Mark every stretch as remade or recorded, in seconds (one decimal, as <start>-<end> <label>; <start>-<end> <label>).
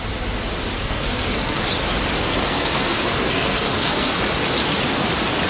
0.0-0.7 recorded; 0.7-1.6 remade; 1.6-2.3 recorded; 2.3-4.2 remade; 4.2-5.5 recorded